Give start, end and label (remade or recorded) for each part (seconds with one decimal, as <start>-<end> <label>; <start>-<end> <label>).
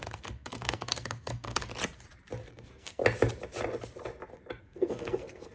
0.0-1.7 remade; 1.7-2.5 recorded; 2.5-3.0 remade; 3.0-4.6 recorded; 4.6-5.5 remade